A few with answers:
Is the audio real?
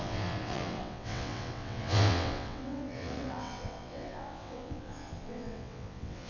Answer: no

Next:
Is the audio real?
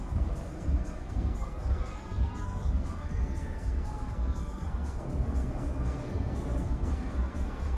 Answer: no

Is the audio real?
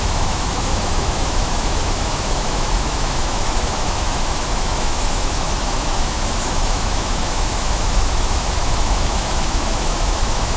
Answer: no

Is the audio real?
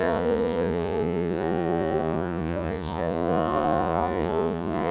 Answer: no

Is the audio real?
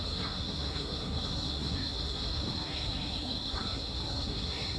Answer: no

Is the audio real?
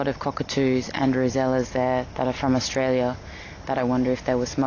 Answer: yes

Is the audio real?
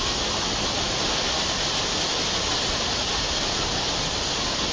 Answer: yes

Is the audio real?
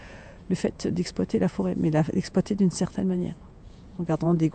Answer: no